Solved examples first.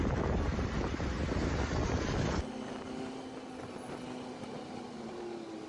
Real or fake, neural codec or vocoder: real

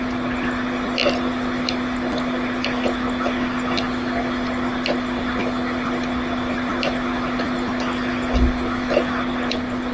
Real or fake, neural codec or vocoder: real